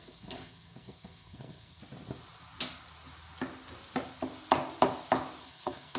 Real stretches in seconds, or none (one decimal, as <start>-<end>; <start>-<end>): 1.8-5.4